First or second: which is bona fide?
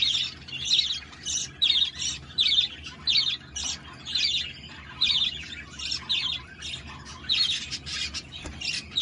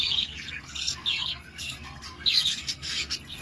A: first